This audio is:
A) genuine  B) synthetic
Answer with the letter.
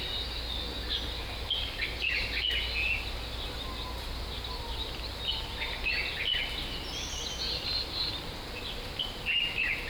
A